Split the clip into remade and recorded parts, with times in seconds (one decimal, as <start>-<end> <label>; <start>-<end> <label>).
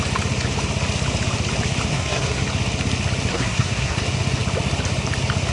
0.0-1.9 recorded; 1.9-2.4 remade; 2.4-3.3 recorded; 3.3-4.0 remade; 4.0-5.5 recorded